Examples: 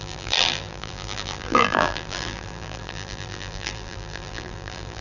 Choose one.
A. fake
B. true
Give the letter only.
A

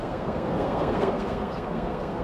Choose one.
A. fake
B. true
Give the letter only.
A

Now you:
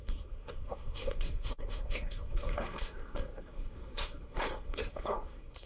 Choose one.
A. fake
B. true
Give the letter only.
A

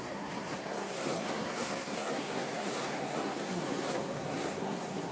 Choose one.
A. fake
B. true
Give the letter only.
A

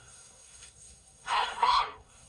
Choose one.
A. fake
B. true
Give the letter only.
A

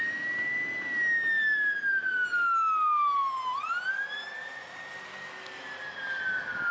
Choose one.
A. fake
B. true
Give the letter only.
B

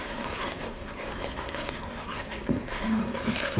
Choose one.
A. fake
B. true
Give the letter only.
A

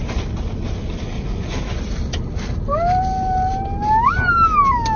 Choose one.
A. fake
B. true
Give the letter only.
B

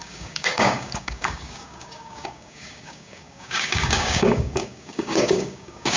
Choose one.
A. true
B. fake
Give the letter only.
B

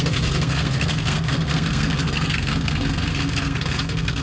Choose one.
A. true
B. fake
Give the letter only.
B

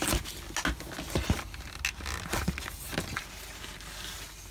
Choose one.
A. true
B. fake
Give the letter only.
A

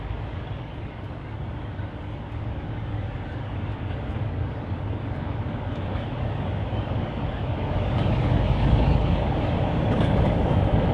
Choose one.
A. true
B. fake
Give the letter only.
B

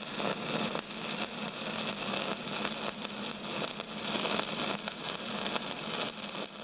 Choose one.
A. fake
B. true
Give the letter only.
B